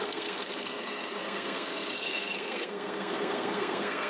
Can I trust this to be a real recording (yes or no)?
no